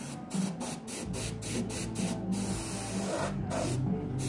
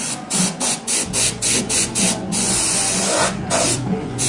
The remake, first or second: second